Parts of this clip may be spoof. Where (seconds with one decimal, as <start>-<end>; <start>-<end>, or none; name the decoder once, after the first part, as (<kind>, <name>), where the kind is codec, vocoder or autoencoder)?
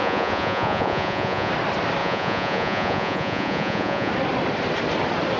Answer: 0.0-1.5 (vocoder, Vocos); 2.0-4.1